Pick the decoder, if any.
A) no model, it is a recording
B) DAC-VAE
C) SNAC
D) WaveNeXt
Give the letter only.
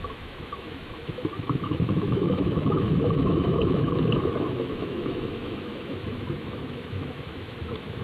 B